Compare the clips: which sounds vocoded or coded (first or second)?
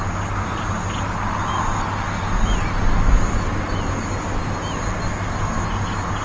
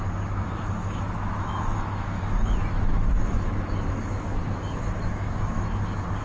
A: second